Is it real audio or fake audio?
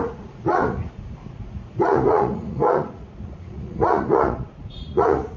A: fake